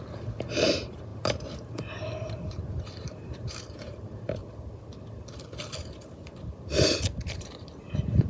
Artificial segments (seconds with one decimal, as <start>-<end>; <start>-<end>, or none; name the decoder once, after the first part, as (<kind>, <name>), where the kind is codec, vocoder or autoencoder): 0.0-4.4 (vocoder, BigVGAN v2); 7.4-8.3